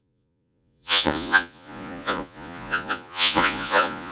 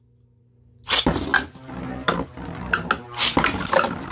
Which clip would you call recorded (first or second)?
second